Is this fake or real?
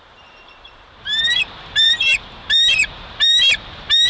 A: fake